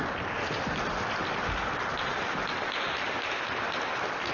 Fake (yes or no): no